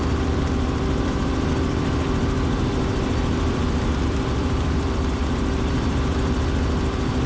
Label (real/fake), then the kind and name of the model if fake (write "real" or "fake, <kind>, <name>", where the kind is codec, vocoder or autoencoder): fake, vocoder, BigVGAN v2